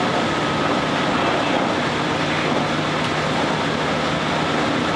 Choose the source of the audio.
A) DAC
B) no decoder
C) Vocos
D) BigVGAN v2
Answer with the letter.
B